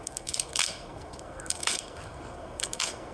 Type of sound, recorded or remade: remade